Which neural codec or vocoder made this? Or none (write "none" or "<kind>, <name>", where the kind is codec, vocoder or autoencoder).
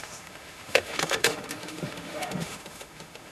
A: autoencoder, DAC-VAE